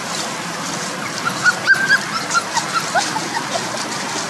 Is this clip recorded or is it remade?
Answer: remade